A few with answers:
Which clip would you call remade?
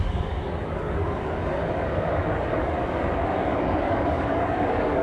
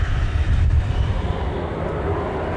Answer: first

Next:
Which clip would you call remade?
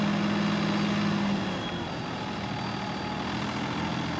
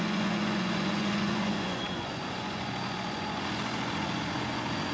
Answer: second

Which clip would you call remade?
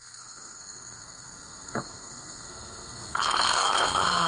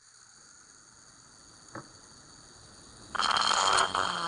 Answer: first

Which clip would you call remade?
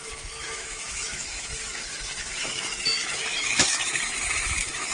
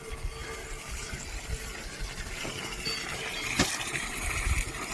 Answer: first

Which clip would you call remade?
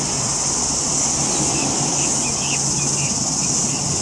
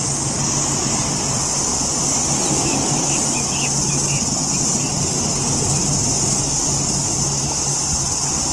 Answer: second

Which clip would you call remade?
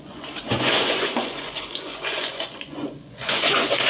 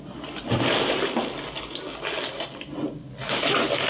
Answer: first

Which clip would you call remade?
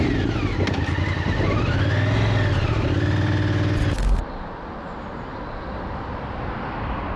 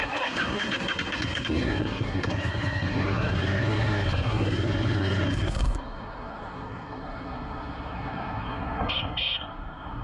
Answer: second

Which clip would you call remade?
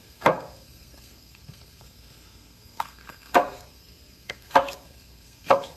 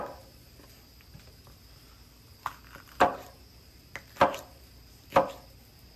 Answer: first